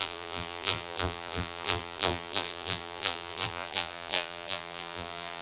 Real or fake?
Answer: fake